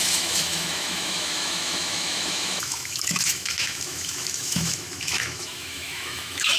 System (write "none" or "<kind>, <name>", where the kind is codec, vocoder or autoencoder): autoencoder, DAC-VAE